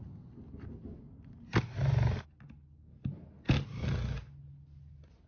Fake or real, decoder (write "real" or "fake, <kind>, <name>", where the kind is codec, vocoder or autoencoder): real